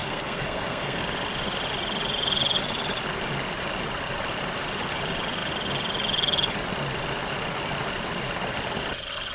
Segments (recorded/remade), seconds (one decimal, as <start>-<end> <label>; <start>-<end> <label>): 0.0-1.0 remade; 1.0-9.3 recorded